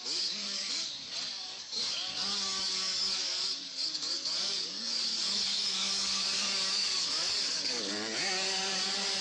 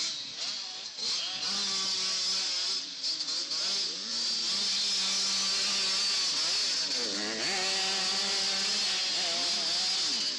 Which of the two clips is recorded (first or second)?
second